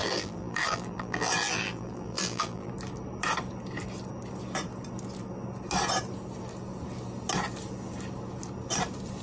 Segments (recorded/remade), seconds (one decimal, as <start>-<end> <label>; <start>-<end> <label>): 0.0-2.7 remade; 2.7-9.2 recorded